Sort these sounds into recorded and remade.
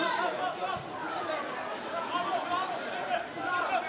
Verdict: remade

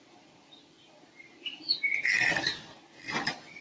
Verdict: remade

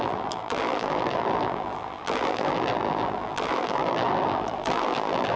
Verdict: remade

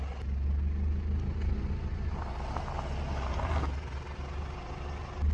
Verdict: recorded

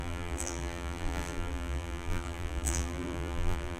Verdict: remade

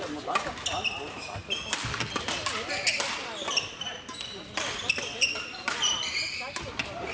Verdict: recorded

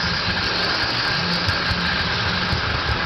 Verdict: recorded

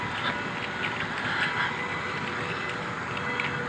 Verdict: recorded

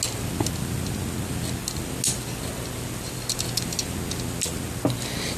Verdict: recorded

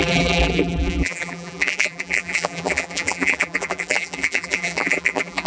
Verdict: remade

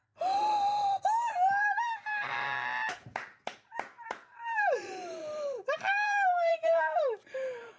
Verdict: remade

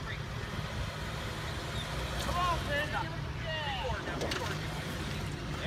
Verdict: recorded